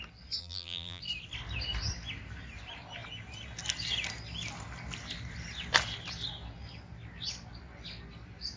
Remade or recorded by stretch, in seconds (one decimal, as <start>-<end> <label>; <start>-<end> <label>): 0.0-0.4 recorded; 0.4-1.0 remade; 1.0-8.6 recorded